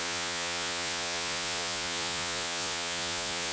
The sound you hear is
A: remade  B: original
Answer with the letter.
A